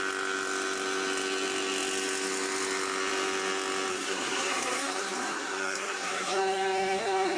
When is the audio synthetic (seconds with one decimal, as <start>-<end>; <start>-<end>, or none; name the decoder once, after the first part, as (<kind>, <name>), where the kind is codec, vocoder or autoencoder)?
3.9-7.4 (codec, SNAC)